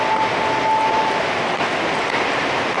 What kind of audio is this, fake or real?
real